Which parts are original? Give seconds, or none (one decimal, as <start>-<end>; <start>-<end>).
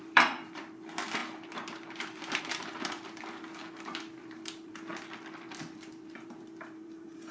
3.6-4.2